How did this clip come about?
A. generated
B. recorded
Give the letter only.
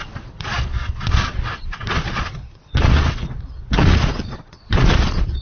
A